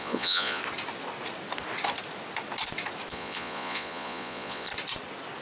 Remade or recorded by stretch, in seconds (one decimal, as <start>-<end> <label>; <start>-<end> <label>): 0.0-0.6 remade; 0.6-3.1 recorded; 3.1-4.7 remade; 4.7-5.4 recorded